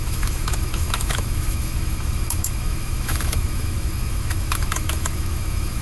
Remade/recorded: remade